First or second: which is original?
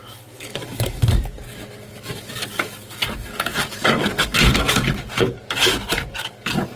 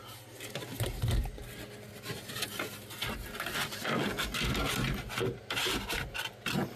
second